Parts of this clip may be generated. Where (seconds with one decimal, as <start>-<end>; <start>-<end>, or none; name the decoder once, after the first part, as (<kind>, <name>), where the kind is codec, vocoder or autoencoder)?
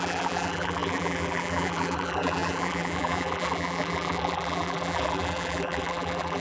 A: 0.0-6.4 (vocoder, BigVGAN v2)